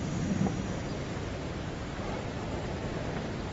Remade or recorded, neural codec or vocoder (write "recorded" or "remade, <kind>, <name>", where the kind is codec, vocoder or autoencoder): remade, vocoder, BigVGAN v2